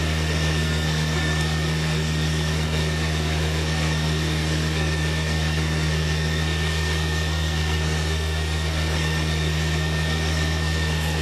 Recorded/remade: remade